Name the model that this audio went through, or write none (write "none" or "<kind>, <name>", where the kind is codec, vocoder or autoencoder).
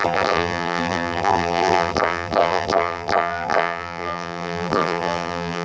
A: vocoder, BigVGAN v2